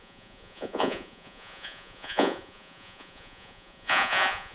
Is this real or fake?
fake